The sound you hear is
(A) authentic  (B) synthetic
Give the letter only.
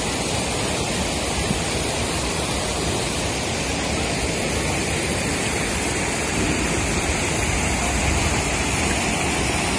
A